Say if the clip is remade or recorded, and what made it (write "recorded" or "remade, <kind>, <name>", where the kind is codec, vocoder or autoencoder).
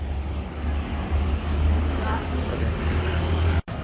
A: remade, codec, DAC